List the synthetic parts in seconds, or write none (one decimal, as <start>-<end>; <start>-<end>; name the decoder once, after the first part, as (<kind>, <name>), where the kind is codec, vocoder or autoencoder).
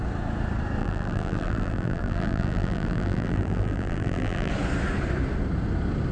0.8-4.5 (vocoder, BigVGAN v2)